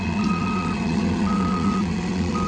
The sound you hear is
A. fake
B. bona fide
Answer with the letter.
A